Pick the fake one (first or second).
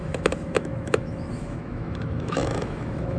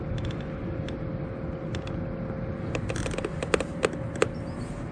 first